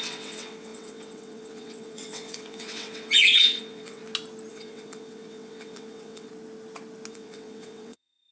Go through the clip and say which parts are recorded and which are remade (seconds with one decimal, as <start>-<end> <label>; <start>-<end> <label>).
0.0-4.0 remade; 4.0-4.5 recorded; 4.5-6.3 remade; 6.3-7.1 recorded; 7.1-8.3 remade